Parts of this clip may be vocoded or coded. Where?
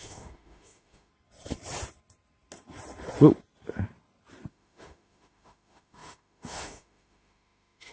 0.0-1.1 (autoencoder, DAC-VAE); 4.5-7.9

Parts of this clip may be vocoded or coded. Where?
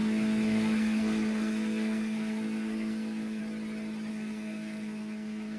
0.0-3.4 (codec, SNAC); 4.1-5.6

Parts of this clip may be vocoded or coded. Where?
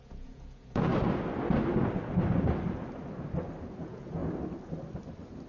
0.0-0.9 (vocoder, Vocos); 3.8-4.2